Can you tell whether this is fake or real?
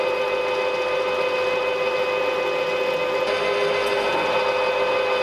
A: real